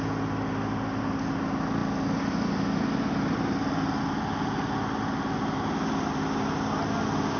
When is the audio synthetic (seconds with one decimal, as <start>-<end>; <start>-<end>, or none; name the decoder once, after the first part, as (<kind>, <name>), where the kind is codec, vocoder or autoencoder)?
none